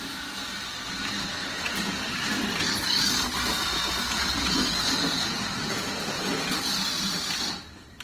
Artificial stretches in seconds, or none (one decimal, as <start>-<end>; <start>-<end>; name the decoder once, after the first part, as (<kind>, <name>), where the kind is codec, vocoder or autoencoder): 1.4-2.0 (vocoder, Vocos); 3.7-6.7